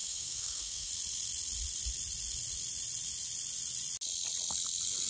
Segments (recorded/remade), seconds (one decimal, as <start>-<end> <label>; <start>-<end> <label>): 0.0-0.9 remade; 0.9-5.1 recorded